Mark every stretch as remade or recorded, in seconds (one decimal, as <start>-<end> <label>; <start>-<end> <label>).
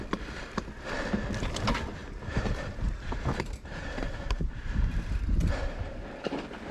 0.0-2.0 recorded; 2.0-6.0 remade; 6.0-6.7 recorded